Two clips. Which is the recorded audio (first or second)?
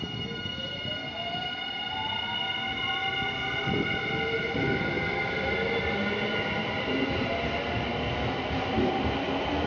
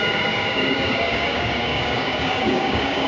first